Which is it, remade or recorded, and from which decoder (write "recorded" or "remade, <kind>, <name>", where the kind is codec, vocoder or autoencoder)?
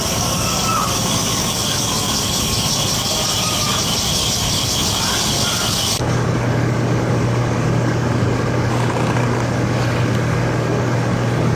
remade, codec, DAC